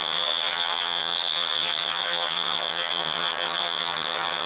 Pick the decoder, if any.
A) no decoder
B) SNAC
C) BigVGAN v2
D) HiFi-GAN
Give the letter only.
D